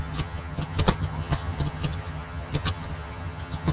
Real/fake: fake